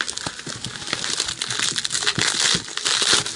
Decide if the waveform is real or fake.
real